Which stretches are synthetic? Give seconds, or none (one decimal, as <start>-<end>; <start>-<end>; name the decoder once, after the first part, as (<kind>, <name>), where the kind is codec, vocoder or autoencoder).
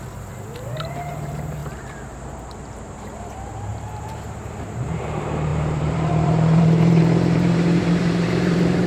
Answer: 0.0-1.6 (vocoder, BigVGAN v2); 2.3-8.9